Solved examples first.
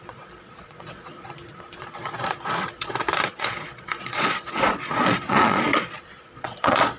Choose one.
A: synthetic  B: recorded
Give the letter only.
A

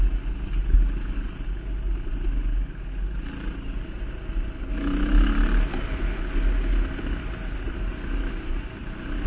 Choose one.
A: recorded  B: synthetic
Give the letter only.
A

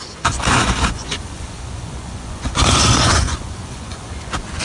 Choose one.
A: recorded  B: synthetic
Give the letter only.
B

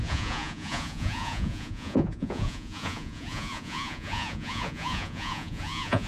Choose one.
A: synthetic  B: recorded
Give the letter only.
A